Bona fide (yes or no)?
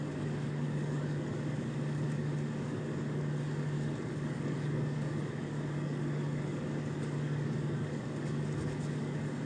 no